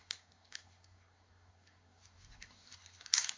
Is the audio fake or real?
fake